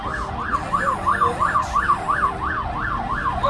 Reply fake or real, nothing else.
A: real